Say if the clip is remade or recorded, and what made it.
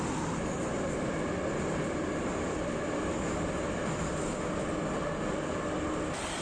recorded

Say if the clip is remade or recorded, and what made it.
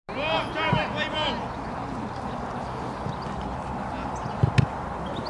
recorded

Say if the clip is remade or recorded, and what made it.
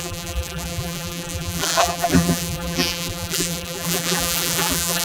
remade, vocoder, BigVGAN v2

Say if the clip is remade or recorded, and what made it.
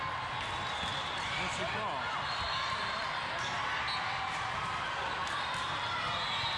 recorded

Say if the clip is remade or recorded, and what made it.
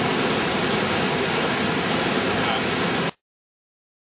recorded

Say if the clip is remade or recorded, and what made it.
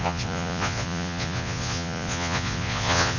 remade, vocoder, Vocos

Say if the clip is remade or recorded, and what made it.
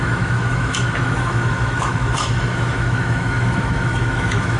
remade, autoencoder, DAC-VAE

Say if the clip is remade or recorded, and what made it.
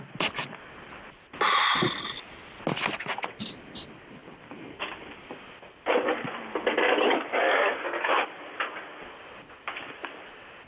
recorded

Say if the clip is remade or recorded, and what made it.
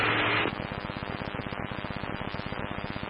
recorded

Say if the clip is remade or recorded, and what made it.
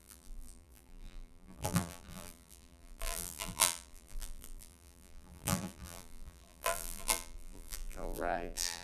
remade, vocoder, BigVGAN v2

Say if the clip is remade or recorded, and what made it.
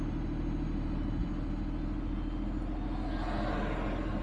recorded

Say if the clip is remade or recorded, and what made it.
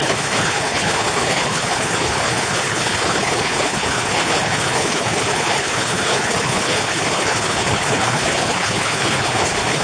remade, codec, HILCodec